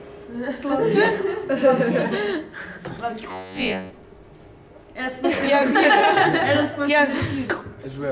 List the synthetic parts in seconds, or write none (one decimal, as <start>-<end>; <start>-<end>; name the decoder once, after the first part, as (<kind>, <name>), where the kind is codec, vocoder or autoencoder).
3.3-3.9 (vocoder, Vocos)